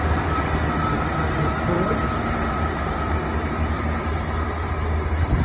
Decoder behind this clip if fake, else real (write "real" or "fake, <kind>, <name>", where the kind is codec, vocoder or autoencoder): fake, vocoder, BigVGAN v2